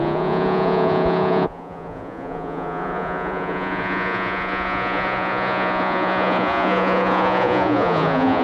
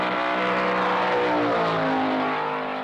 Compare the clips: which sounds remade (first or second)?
first